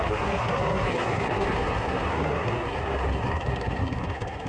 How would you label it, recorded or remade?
remade